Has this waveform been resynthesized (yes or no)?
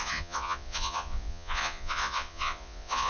yes